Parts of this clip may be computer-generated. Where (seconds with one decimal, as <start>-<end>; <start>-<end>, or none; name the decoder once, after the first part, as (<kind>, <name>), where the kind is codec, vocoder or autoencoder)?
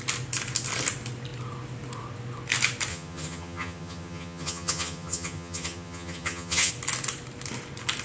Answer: 2.9-6.7 (vocoder, HiFi-GAN)